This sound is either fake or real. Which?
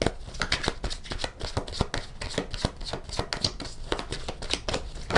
real